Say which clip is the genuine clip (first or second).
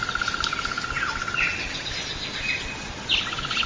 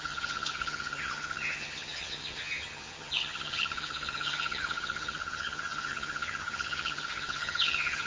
first